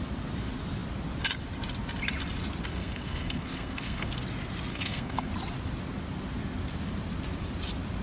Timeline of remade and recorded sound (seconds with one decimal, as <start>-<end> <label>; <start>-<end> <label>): 0.0-2.7 recorded; 2.7-4.2 remade; 4.2-4.7 recorded; 4.7-5.3 remade; 5.3-8.0 recorded